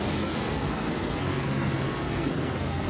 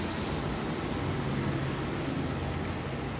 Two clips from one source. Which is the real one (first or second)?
second